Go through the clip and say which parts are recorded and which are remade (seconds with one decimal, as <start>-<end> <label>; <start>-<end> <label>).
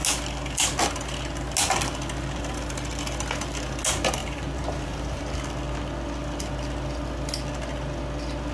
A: 0.0-4.2 recorded; 4.2-5.2 remade; 5.2-8.5 recorded